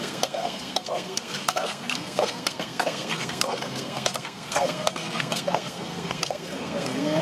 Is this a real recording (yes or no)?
no